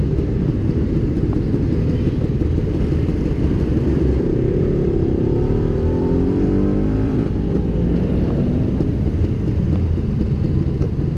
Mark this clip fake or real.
fake